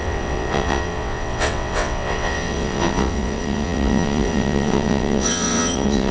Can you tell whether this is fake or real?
fake